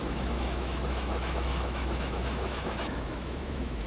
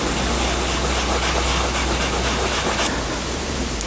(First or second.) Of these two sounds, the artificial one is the first